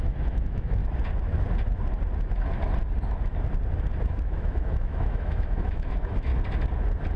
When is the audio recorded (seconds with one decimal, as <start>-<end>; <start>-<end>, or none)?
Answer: 0.8-4.0; 6.3-7.2